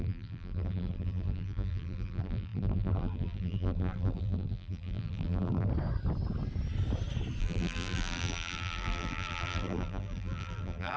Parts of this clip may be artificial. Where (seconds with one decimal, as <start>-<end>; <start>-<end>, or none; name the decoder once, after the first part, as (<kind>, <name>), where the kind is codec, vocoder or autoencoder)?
0.0-5.7 (vocoder, BigVGAN v2); 7.4-11.0